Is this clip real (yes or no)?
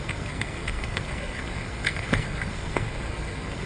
no